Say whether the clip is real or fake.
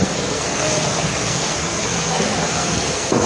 fake